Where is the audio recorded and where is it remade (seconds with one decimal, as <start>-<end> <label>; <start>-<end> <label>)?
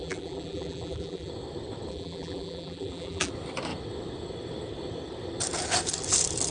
0.0-1.3 remade; 1.3-1.9 recorded; 1.9-3.3 remade; 3.3-6.5 recorded